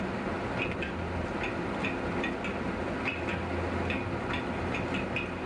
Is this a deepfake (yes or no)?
no